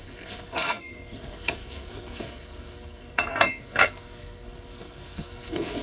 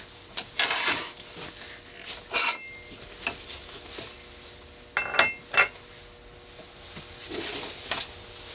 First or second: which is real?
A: second